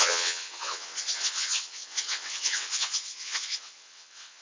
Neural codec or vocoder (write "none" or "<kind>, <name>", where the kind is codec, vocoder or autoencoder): vocoder, WaveNeXt